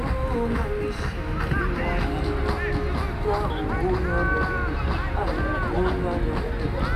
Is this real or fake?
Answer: real